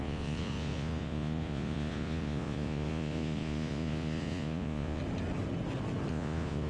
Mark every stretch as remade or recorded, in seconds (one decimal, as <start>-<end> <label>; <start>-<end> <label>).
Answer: 0.0-5.0 remade; 5.0-6.1 recorded; 6.1-6.7 remade